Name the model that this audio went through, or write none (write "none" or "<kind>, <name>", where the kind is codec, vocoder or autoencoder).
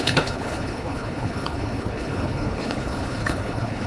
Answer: codec, HILCodec